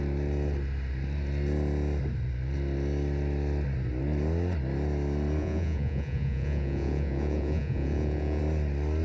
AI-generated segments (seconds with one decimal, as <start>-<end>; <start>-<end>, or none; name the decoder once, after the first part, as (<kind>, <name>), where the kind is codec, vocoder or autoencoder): 5.4-8.4 (vocoder, Vocos)